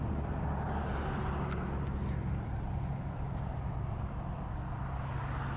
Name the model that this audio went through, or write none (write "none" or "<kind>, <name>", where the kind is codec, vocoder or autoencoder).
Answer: none